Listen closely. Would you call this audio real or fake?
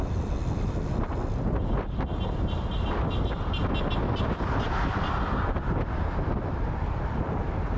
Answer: real